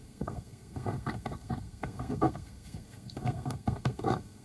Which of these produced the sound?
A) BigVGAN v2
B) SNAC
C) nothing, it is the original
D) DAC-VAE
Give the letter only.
B